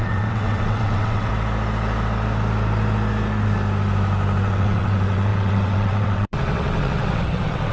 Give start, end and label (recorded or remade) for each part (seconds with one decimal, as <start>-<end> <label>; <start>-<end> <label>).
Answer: 0.0-1.3 remade; 1.3-4.4 recorded; 4.4-7.7 remade